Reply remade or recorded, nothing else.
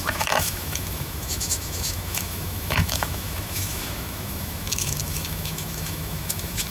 remade